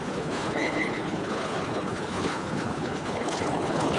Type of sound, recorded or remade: remade